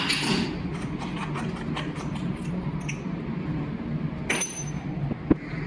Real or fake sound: real